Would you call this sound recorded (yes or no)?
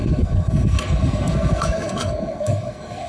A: no